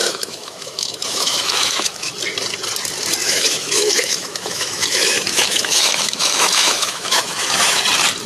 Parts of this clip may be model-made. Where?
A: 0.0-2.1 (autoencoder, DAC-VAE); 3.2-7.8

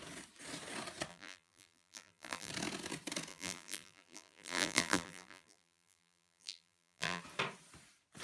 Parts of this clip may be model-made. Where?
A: 1.1-2.5 (vocoder, BigVGAN v2); 3.3-7.2